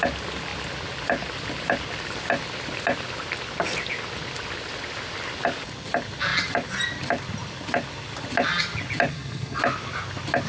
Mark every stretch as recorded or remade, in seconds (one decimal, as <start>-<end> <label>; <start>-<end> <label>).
0.0-9.1 recorded; 9.1-9.6 remade; 9.6-10.5 recorded